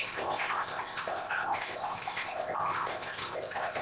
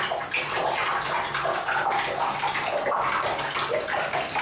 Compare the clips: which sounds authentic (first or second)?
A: second